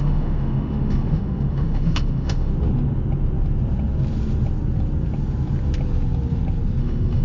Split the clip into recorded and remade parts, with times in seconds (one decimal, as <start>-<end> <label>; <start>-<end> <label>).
0.0-2.5 remade; 2.5-6.8 recorded; 6.8-7.2 remade